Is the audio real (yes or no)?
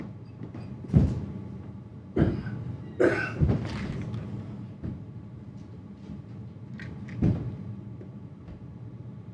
no